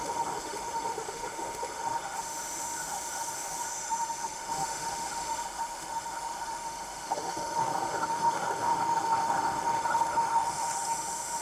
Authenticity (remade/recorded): remade